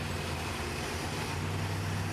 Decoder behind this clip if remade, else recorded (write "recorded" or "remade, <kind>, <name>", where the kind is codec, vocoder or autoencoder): recorded